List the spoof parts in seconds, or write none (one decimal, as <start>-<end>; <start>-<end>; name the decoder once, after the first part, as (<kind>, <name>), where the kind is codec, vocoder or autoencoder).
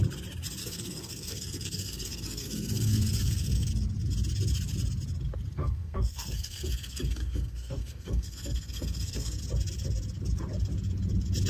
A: 0.6-3.7 (codec, SNAC); 5.6-9.4